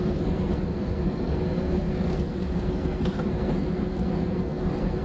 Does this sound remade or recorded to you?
remade